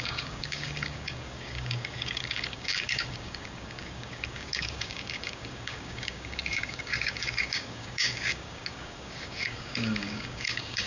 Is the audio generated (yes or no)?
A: yes